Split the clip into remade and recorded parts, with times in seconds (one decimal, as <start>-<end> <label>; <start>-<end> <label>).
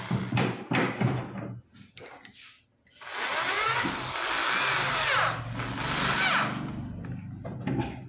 0.0-8.1 recorded